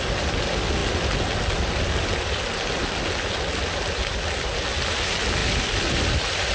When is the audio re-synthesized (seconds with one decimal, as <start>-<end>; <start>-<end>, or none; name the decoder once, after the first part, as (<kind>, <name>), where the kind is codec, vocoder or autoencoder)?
5.4-6.5 (vocoder, BigVGAN v2)